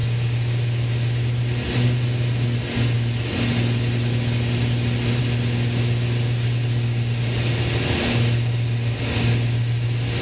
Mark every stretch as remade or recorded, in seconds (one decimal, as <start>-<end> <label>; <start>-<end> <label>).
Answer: 0.0-10.2 recorded